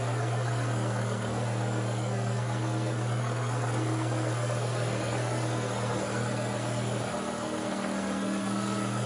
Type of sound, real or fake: fake